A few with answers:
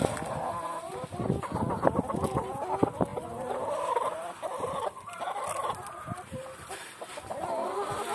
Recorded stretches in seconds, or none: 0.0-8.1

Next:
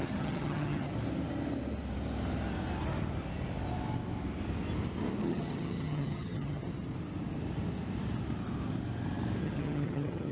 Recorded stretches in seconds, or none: 0.9-5.2; 6.6-9.4

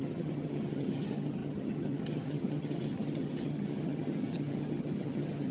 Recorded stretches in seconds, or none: none

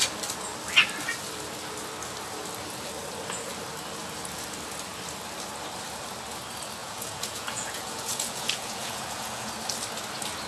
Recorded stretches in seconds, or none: 0.0-6.8; 9.5-10.5